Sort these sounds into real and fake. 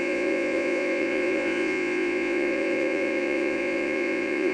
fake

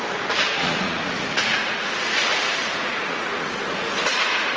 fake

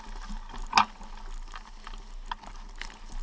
real